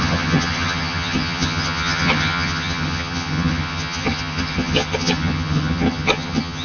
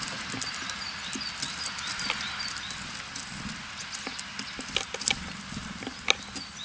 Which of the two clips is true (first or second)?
second